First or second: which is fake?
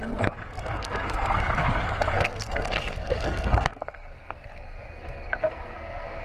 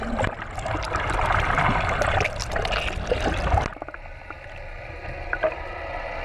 first